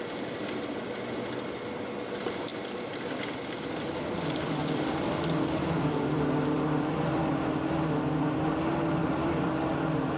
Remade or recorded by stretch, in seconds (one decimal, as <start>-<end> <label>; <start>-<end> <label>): 0.0-2.5 recorded; 2.5-7.2 remade; 7.2-9.0 recorded; 9.0-9.7 remade; 9.7-10.2 recorded